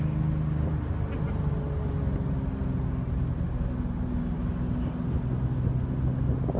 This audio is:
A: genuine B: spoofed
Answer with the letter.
A